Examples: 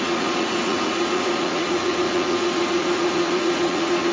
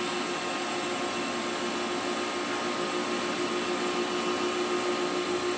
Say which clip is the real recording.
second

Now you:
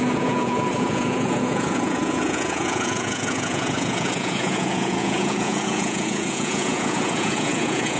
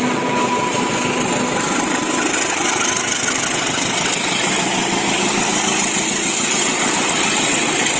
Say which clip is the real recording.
second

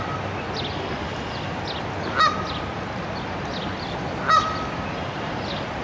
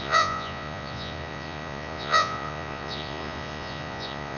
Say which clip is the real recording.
first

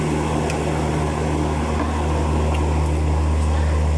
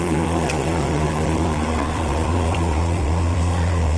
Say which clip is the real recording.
first